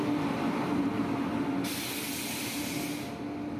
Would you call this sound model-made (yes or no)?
no